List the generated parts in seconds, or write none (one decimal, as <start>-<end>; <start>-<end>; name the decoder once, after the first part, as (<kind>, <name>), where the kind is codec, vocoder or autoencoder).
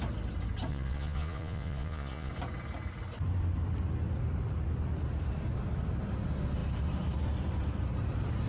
0.7-2.3 (vocoder, Vocos)